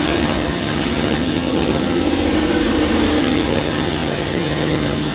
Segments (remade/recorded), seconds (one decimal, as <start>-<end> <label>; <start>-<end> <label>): 0.0-2.0 remade; 2.0-3.2 recorded; 3.2-5.1 remade